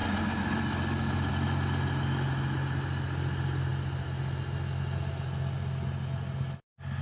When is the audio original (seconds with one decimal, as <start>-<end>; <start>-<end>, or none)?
0.0-7.0